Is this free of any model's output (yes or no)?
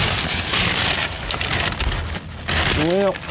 yes